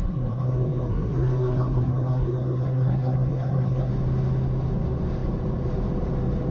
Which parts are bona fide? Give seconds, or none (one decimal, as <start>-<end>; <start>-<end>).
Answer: 3.9-6.5